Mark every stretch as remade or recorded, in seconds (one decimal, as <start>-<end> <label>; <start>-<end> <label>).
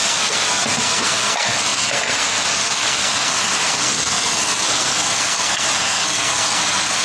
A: 0.0-7.0 remade